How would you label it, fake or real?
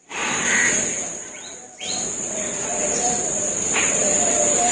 fake